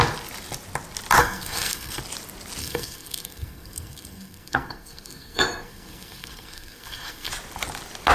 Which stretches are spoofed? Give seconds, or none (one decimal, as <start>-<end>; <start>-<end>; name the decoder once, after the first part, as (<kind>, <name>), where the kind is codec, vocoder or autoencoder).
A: 1.2-2.0 (codec, SNAC); 2.6-7.3